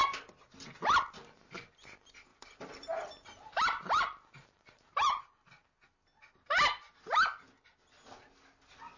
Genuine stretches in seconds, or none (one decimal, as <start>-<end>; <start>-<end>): 0.0-2.3; 5.2-9.0